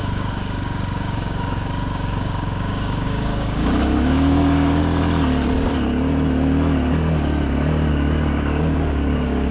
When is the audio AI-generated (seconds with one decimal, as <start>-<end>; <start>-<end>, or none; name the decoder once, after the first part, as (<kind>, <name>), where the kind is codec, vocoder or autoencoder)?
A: 0.0-4.8 (codec, DAC); 7.9-9.5

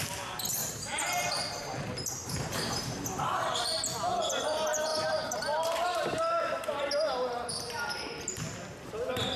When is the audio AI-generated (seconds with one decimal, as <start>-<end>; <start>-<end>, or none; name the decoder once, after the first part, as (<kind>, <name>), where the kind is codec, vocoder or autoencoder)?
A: 0.6-1.5 (vocoder, BigVGAN v2); 2.2-3.8; 4.9-7.5

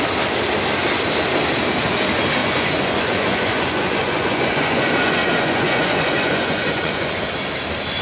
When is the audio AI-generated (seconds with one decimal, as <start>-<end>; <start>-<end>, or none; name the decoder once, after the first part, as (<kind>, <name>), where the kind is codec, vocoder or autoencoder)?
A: 2.4-7.2 (vocoder, Vocos)

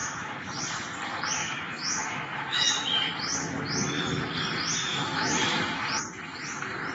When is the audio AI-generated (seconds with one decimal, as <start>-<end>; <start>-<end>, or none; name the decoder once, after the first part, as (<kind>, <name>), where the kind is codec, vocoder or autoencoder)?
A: 0.0-0.6 (autoencoder, DAC-VAE); 1.4-2.7; 4.8-5.8